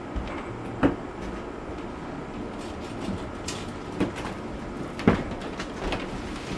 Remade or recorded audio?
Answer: recorded